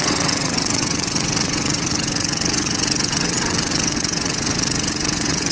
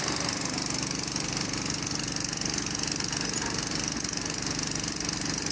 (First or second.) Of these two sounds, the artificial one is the first